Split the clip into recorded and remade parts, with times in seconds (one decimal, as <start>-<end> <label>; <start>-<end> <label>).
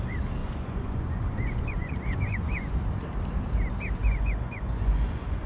0.0-0.4 recorded; 0.4-2.8 remade; 2.8-4.0 recorded; 4.0-5.5 remade